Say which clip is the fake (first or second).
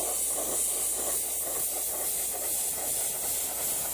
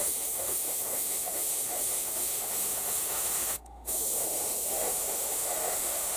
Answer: second